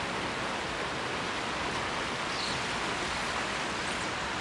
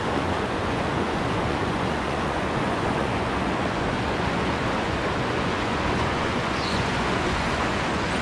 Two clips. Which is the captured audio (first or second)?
first